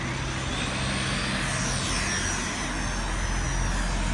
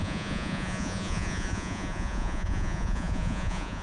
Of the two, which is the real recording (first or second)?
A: first